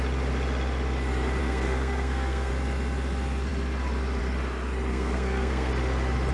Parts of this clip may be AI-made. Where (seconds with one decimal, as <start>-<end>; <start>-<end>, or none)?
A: 1.4-2.5; 4.9-5.7